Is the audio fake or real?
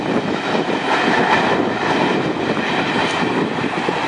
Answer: real